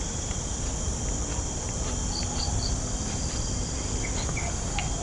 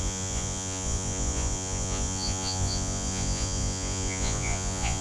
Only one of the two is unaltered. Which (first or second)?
first